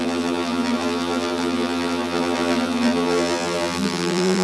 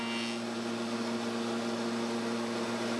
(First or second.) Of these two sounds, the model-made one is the first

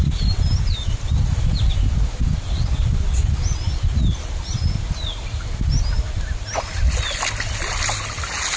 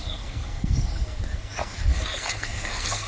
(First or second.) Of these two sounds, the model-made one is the second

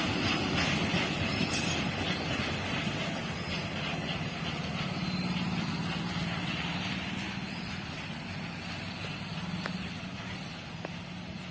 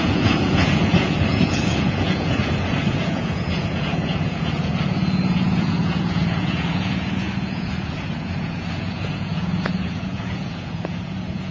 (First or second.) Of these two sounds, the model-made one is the second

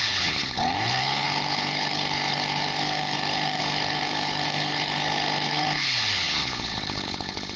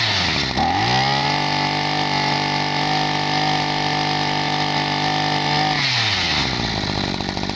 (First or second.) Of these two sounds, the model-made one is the first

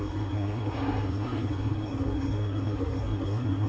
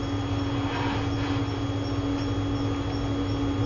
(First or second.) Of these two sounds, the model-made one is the first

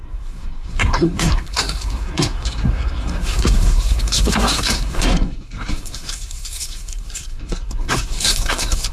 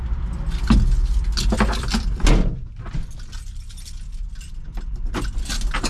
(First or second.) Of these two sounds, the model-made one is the first